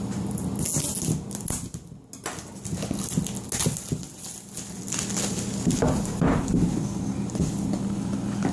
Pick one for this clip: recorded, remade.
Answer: recorded